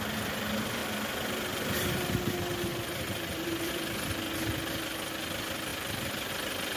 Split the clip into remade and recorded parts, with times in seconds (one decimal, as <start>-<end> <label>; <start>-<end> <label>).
0.0-0.8 recorded; 0.8-2.2 remade; 2.2-2.7 recorded; 2.7-3.7 remade; 3.7-5.7 recorded; 5.7-6.3 remade; 6.3-6.8 recorded